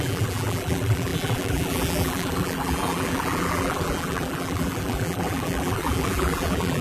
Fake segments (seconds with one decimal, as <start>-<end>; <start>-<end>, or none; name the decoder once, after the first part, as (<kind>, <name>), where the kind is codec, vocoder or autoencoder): 0.0-6.8 (vocoder, BigVGAN v2)